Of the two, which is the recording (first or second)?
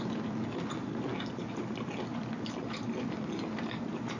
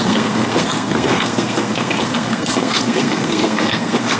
first